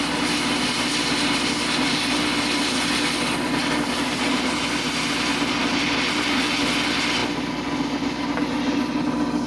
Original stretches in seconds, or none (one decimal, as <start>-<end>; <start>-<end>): 0.0-9.5